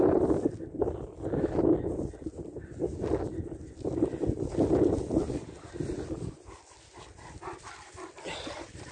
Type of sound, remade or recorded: recorded